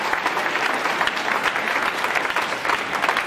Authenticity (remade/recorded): recorded